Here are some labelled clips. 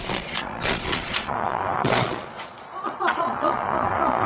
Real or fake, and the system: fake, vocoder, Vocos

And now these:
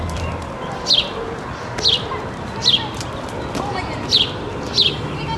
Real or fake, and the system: real